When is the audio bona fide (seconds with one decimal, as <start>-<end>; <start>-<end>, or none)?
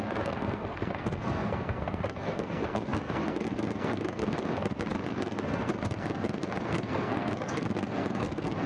none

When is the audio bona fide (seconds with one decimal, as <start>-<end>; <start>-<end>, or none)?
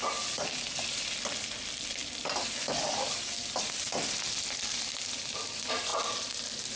0.0-6.8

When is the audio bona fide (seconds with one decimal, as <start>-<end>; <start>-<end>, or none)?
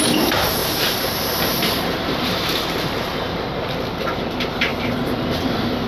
0.0-0.6; 3.5-5.9